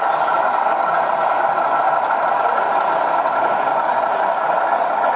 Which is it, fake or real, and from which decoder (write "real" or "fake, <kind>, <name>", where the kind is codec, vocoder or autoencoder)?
real